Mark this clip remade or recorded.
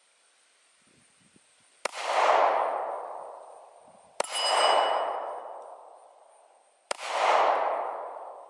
recorded